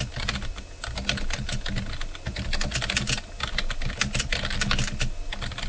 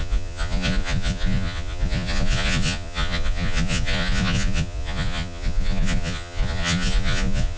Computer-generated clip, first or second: second